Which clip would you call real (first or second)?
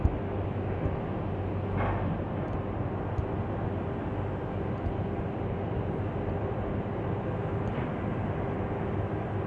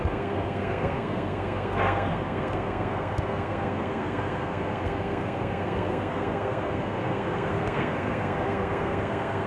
first